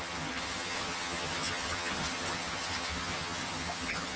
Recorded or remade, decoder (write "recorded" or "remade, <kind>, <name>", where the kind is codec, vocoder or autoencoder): remade, vocoder, HiFi-GAN